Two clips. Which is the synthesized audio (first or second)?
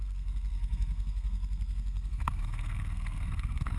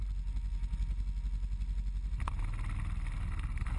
first